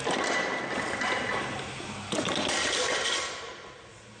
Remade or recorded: recorded